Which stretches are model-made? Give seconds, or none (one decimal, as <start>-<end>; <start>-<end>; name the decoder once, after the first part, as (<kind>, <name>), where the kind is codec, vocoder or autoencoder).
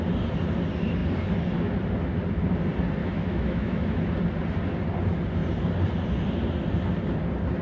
3.0-4.1 (autoencoder, DAC-VAE)